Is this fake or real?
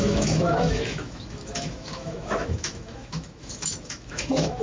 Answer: fake